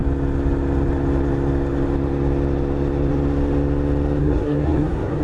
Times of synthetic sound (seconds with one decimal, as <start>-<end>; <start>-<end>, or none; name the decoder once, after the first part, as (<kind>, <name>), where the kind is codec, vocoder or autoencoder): 4.2-5.2 (codec, SNAC)